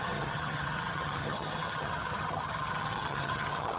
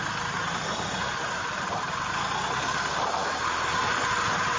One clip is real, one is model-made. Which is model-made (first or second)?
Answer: first